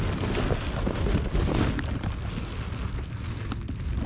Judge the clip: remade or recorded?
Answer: recorded